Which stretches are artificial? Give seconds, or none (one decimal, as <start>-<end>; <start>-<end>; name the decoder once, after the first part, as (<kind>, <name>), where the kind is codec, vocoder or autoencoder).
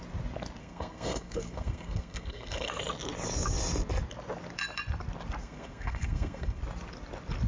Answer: 0.6-2.8 (codec, SNAC); 5.4-6.6